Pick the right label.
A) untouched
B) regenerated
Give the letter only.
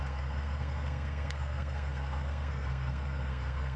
B